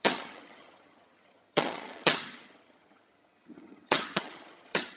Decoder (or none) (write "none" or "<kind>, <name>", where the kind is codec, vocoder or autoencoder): vocoder, HiFi-GAN